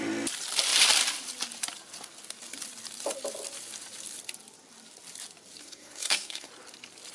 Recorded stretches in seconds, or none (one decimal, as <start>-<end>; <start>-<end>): 0.0-5.6; 6.5-7.1